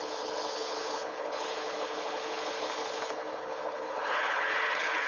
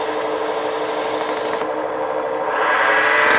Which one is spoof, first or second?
first